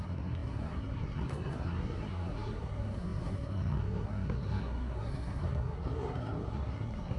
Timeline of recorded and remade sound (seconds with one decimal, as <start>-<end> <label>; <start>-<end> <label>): 0.0-7.2 remade